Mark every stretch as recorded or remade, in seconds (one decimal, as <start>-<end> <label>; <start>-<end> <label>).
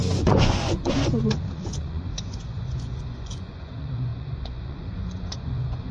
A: 0.0-5.9 remade